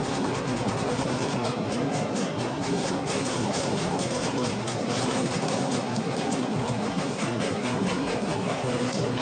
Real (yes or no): no